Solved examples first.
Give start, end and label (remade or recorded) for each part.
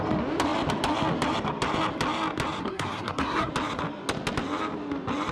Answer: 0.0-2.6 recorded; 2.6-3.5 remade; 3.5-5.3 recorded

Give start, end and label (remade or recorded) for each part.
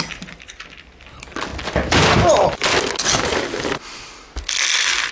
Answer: 0.0-5.1 recorded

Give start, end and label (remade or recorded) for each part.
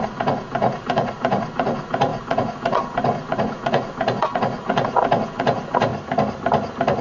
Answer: 0.0-5.9 remade; 5.9-7.0 recorded